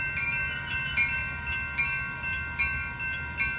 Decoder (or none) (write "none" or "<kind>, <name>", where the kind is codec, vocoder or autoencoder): none